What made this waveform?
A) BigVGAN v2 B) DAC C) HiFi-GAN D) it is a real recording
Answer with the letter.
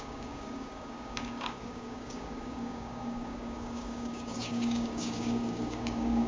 B